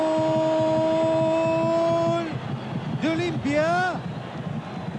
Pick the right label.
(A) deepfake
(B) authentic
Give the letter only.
B